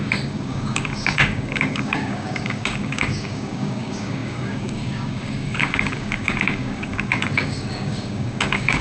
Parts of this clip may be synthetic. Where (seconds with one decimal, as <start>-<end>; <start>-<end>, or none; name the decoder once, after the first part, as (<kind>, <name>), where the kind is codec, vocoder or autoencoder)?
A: 0.0-8.8 (codec, DAC)